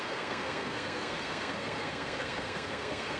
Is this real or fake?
fake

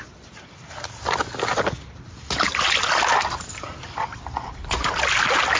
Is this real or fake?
real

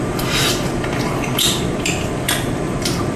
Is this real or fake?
real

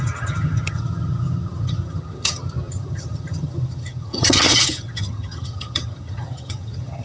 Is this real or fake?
fake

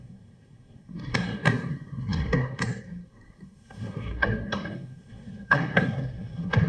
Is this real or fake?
fake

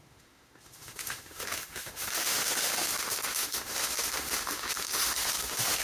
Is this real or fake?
fake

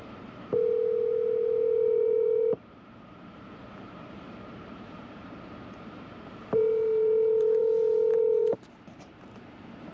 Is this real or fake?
fake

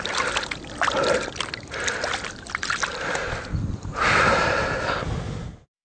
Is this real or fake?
real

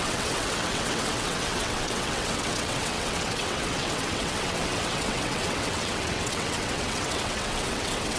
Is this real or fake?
fake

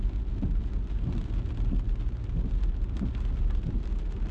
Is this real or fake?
real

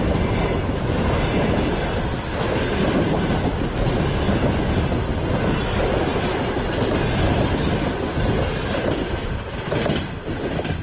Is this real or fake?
real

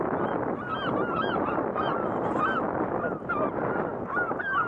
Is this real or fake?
real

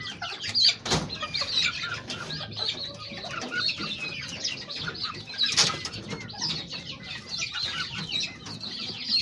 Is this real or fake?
real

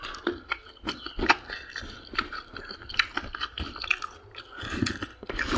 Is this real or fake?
real